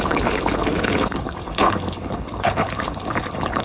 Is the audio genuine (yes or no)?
no